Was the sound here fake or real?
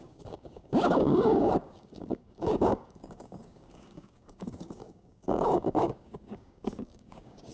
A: fake